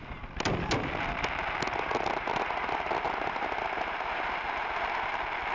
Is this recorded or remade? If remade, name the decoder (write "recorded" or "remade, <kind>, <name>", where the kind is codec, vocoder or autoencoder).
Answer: recorded